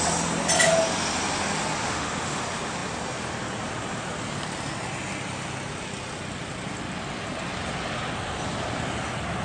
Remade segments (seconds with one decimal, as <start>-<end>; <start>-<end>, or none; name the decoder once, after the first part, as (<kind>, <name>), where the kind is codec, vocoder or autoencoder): 1.8-2.4 (autoencoder, DAC-VAE)

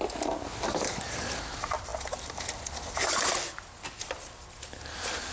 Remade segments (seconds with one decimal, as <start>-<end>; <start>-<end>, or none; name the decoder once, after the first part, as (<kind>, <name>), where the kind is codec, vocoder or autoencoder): none